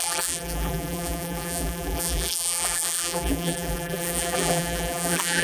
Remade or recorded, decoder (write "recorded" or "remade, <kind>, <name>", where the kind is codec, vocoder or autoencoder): remade, vocoder, BigVGAN v2